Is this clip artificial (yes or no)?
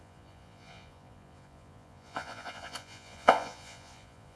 yes